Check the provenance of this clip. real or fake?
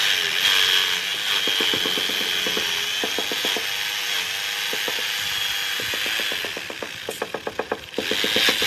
real